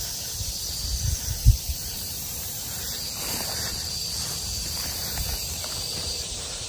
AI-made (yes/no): yes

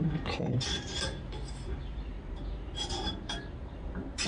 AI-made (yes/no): yes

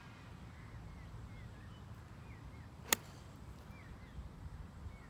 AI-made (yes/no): no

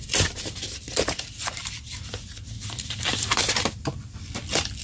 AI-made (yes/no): yes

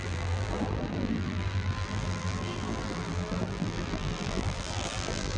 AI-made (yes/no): yes